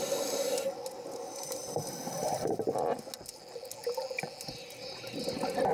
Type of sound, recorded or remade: recorded